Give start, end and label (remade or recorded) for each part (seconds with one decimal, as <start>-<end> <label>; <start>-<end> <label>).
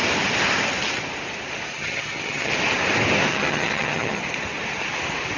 0.0-1.7 recorded; 1.7-2.5 remade; 2.5-3.3 recorded; 3.3-4.2 remade; 4.2-5.4 recorded